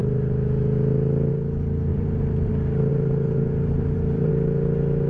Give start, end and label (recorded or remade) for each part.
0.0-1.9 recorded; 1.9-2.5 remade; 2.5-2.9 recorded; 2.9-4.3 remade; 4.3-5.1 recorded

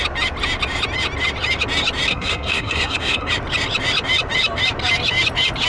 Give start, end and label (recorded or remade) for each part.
0.0-2.1 recorded; 2.1-3.3 remade; 3.3-5.7 recorded

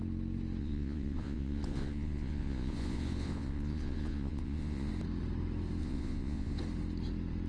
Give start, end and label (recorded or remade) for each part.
0.0-0.6 recorded; 0.6-4.9 remade; 4.9-5.8 recorded; 5.8-6.6 remade; 6.6-7.5 recorded

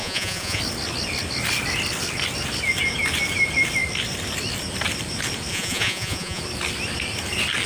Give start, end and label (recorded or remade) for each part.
0.0-0.6 remade; 0.6-5.5 recorded; 5.5-6.4 remade; 6.4-7.7 recorded

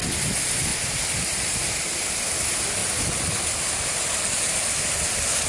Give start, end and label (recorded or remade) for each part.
0.0-5.5 recorded

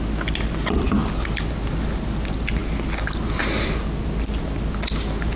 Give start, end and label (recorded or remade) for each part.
0.0-5.4 recorded

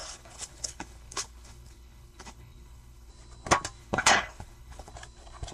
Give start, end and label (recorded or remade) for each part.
0.0-3.1 remade; 3.1-3.8 recorded; 3.8-4.9 remade; 4.9-5.5 recorded

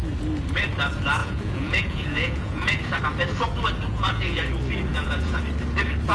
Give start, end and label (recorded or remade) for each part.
0.0-1.2 recorded; 1.2-2.8 remade; 2.8-3.9 recorded; 3.9-4.4 remade; 4.4-4.9 recorded; 4.9-5.4 remade; 5.4-6.1 recorded